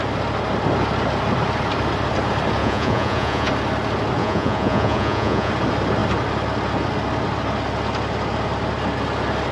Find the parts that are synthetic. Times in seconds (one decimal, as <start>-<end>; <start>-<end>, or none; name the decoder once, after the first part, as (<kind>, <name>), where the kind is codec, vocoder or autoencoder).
2.6-3.5 (vocoder, Vocos); 4.2-5.5